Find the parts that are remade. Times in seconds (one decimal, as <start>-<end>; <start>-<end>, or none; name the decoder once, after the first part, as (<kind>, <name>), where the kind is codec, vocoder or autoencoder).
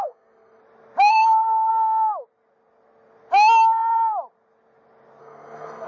0.0-0.6 (codec, SNAC); 1.1-1.7; 5.2-5.9